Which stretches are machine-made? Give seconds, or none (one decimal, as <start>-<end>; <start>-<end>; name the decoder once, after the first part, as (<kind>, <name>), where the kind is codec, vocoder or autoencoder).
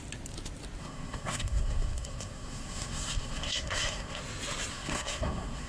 0.8-4.2 (codec, SNAC); 4.7-5.7